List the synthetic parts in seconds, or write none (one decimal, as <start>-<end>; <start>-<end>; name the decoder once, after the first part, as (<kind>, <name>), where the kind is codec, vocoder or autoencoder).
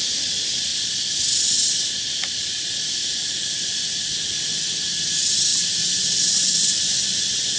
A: 5.5-6.9 (vocoder, BigVGAN v2)